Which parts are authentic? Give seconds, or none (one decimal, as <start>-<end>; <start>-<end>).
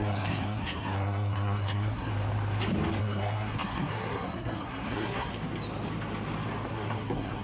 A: 2.1-3.0; 5.3-6.7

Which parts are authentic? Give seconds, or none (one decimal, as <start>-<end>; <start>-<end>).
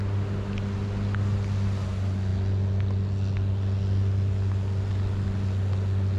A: 0.0-6.2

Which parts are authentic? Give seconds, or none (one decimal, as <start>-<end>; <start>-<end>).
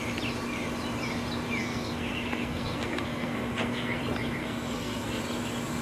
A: 0.0-1.6; 4.0-4.4; 5.2-5.8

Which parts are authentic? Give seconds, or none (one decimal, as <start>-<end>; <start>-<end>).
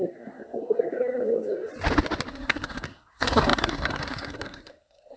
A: 1.7-2.3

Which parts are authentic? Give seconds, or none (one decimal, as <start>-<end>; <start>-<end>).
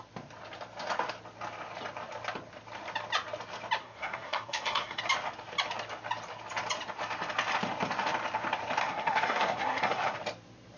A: 0.0-3.8; 5.0-8.8; 10.2-10.8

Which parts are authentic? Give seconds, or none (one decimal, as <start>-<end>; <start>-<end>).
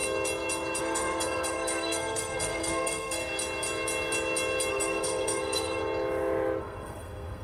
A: 0.0-0.8; 3.2-4.7; 5.8-6.6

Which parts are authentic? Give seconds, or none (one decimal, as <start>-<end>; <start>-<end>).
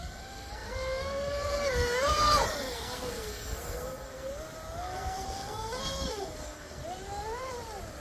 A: 4.3-4.8; 6.8-8.0